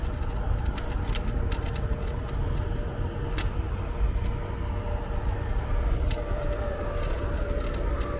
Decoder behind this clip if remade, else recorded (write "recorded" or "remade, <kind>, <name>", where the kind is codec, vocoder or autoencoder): recorded